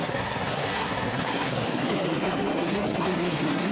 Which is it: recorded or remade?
remade